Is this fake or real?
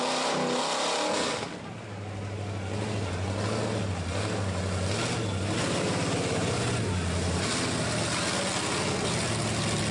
real